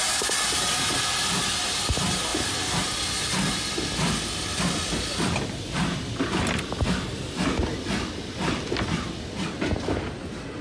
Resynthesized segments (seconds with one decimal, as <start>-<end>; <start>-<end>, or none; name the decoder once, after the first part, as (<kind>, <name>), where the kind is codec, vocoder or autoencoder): none